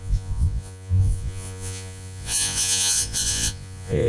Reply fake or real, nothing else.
fake